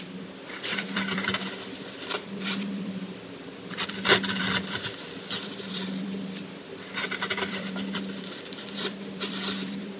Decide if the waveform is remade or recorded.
remade